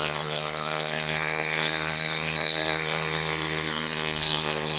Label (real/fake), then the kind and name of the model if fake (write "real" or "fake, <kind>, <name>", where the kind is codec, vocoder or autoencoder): fake, codec, SNAC